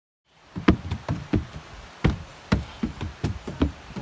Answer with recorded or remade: remade